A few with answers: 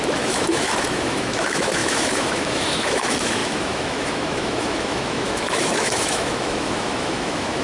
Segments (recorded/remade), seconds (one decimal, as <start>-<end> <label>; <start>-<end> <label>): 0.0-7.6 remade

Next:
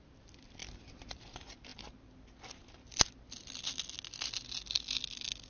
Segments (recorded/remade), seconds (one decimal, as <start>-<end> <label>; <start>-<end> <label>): 0.0-5.5 recorded

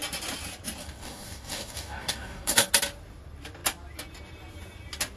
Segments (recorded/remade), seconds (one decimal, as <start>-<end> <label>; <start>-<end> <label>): 0.0-0.8 recorded; 0.8-2.7 remade; 2.7-5.2 recorded